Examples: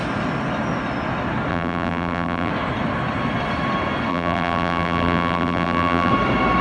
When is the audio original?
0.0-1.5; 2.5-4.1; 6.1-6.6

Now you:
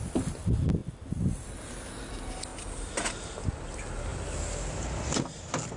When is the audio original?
0.0-2.5; 3.4-5.8

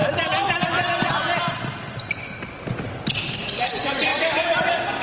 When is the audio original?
0.0-5.0

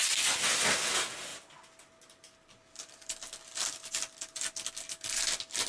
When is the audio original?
0.0-5.7

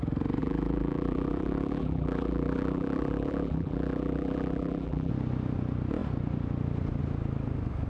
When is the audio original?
0.0-0.4; 5.1-7.9

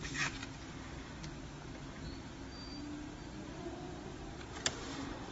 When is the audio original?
0.4-3.6

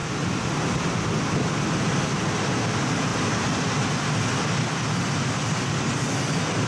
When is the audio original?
0.0-6.7